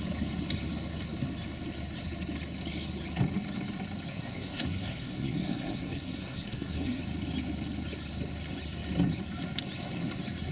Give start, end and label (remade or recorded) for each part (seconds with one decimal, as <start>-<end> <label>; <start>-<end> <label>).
0.0-4.1 recorded; 4.1-7.0 remade; 7.0-10.5 recorded

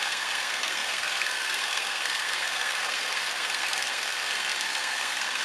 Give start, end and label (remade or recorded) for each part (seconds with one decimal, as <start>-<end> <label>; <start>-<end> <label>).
0.0-5.4 remade

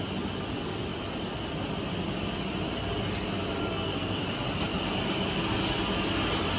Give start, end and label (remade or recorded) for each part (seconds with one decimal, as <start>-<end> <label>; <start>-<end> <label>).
0.0-3.6 recorded; 3.6-4.2 remade; 4.2-6.6 recorded

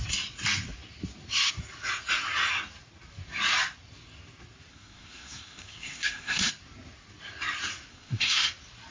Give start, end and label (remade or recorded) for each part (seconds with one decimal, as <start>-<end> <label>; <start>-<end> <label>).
0.0-4.7 recorded; 4.7-6.5 remade; 6.5-7.9 recorded; 7.9-8.5 remade; 8.5-8.9 recorded

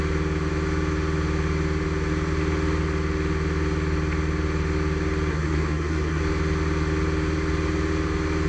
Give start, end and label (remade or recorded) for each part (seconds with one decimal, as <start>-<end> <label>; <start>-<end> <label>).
0.0-5.3 recorded; 5.3-6.2 remade; 6.2-8.5 recorded

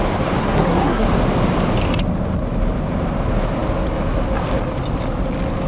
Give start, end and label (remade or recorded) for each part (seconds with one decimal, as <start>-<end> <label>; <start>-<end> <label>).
0.0-0.4 recorded; 0.4-1.1 remade; 1.1-5.7 recorded

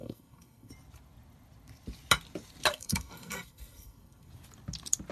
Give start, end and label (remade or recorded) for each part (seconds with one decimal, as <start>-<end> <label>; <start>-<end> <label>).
0.0-0.7 remade; 0.7-2.7 recorded; 2.7-4.3 remade; 4.3-5.1 recorded

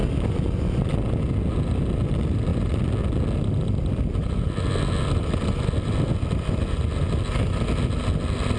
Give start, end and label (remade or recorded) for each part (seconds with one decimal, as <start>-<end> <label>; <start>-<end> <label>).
0.0-8.6 recorded